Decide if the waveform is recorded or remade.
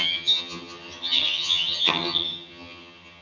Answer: remade